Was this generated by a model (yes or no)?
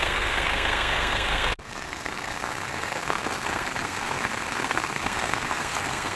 yes